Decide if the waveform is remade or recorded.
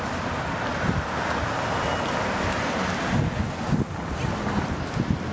recorded